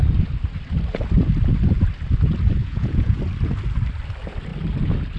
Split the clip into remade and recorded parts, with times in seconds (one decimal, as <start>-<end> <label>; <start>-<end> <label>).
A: 0.0-2.6 recorded; 2.6-3.2 remade; 3.2-5.2 recorded